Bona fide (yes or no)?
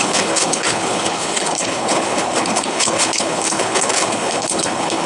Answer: no